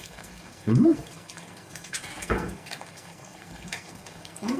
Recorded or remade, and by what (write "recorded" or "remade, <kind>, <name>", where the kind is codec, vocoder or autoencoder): remade, codec, SNAC